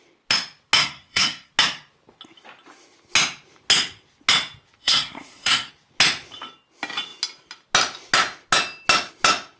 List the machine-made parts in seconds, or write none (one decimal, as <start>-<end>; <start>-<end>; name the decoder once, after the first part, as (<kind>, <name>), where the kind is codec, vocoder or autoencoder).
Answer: 0.8-1.5 (codec, SNAC); 4.8-5.7